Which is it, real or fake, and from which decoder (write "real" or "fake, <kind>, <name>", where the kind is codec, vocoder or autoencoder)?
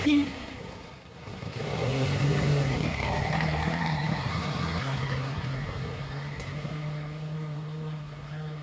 fake, codec, SNAC